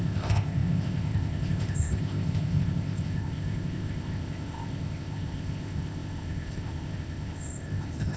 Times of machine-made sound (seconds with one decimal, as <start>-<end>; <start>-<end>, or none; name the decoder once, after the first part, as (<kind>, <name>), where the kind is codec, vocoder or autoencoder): 0.0-8.2 (codec, ZipCodec)